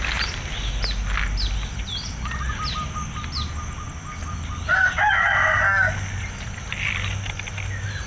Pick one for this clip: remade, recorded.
recorded